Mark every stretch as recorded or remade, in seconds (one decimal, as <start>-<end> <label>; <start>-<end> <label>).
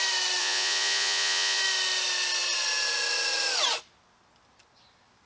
0.0-0.4 recorded; 0.4-1.6 remade; 1.6-5.3 recorded